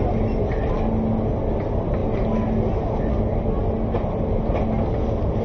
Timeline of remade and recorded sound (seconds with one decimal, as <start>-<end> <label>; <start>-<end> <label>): 0.0-5.4 recorded